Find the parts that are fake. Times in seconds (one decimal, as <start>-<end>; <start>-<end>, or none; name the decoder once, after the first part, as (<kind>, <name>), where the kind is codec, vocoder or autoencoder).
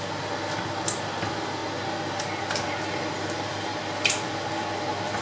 none